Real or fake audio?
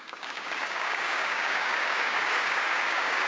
fake